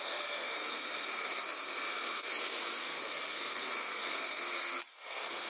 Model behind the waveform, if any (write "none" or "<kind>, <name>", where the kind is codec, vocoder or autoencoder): codec, SNAC